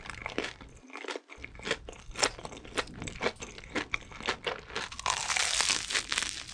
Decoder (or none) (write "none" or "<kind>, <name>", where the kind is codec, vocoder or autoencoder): none